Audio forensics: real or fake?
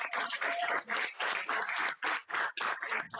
real